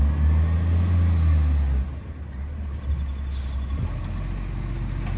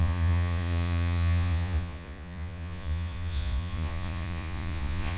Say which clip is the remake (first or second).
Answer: second